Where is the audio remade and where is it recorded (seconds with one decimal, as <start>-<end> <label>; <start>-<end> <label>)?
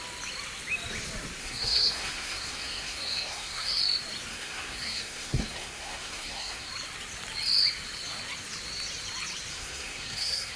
0.0-1.4 recorded; 1.4-3.8 remade; 3.8-4.3 recorded; 4.3-6.7 remade; 6.7-9.5 recorded; 9.5-10.6 remade